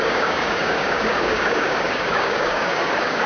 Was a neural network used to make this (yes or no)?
yes